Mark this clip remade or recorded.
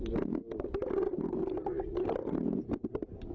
recorded